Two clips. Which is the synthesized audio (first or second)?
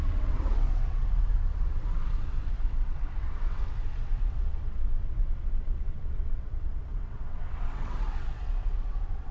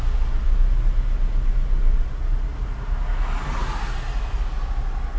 first